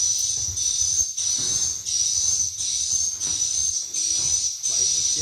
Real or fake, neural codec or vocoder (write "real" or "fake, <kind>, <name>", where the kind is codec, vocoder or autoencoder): real